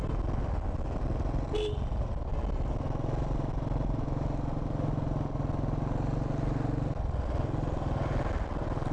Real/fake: real